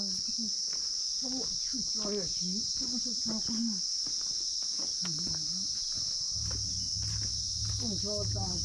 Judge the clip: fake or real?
real